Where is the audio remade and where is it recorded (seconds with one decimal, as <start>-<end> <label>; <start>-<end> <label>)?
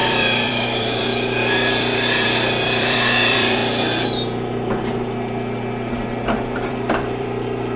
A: 0.0-3.6 remade; 3.6-5.9 recorded; 5.9-7.8 remade